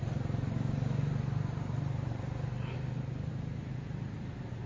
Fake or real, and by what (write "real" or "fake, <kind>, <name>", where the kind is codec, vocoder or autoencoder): fake, vocoder, BigVGAN v2